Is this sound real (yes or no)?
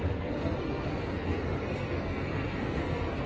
no